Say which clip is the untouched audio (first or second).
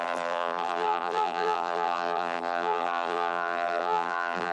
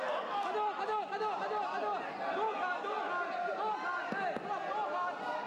second